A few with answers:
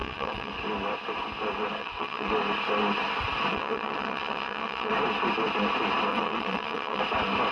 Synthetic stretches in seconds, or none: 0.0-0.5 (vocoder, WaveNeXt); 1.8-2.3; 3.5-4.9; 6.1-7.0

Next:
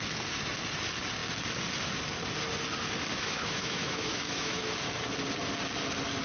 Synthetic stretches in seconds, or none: 3.1-4.7 (autoencoder, DAC-VAE)

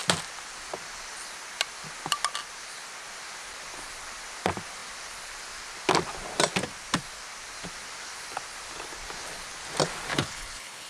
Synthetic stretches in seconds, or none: 10.1-10.9 (codec, HILCodec)

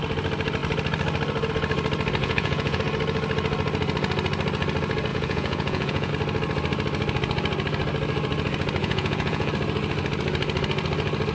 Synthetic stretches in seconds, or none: 2.2-2.8 (vocoder, Vocos); 5.1-6.1; 8.8-9.5

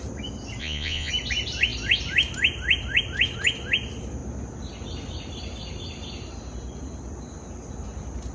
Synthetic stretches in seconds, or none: 0.6-1.1 (vocoder, Vocos)

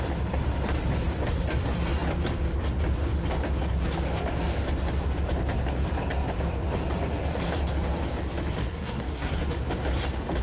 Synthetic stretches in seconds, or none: 8.6-9.6 (codec, SNAC)

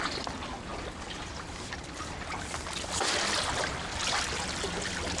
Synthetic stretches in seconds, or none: none